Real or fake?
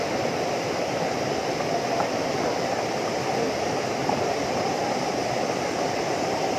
real